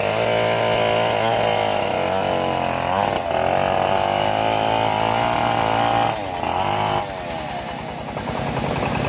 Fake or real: real